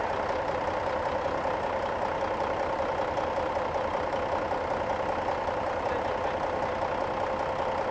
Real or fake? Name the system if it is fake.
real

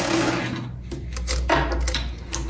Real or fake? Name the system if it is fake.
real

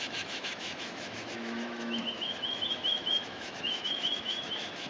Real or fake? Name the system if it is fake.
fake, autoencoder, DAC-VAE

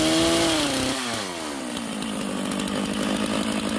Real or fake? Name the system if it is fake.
real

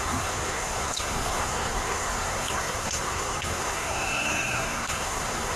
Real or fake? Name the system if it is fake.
fake, codec, SNAC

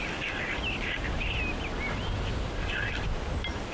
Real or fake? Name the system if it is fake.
real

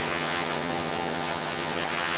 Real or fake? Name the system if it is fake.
fake, vocoder, HiFi-GAN